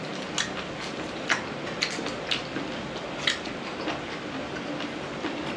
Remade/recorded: recorded